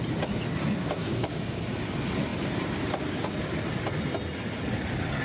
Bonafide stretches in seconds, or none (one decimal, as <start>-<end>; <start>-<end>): 0.0-1.0; 1.6-5.2